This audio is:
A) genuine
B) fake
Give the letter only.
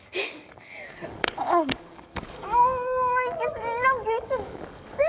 B